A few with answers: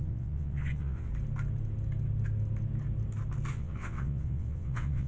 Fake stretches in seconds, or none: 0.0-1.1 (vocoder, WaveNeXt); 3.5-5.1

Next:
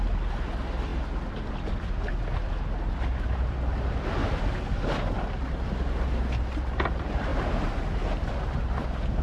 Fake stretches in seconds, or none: 7.3-7.8 (vocoder, BigVGAN v2)

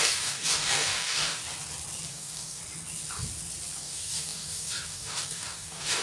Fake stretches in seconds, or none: 0.0-1.4 (codec, DAC); 2.1-2.6; 3.8-6.0

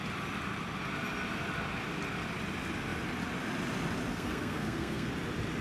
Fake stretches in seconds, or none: 4.1-5.1 (codec, SNAC)

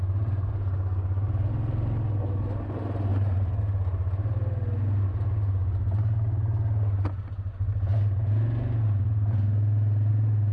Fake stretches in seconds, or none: 3.1-3.6 (vocoder, BigVGAN v2)